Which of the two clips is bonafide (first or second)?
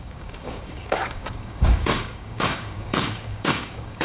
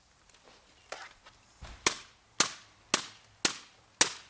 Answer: second